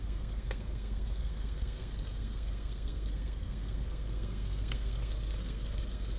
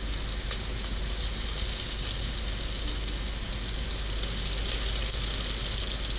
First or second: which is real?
second